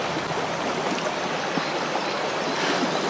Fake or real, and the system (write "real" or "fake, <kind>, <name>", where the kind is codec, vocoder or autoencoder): real